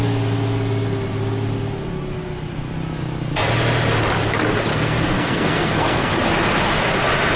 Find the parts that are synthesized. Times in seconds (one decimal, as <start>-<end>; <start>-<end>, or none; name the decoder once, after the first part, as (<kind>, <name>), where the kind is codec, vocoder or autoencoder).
4.7-6.1 (codec, SNAC)